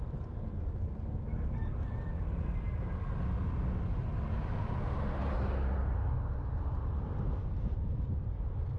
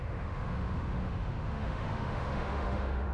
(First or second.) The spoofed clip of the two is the second